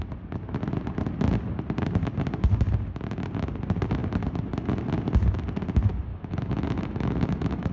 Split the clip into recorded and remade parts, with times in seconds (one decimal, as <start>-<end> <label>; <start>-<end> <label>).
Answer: 0.0-6.1 recorded; 6.1-7.7 remade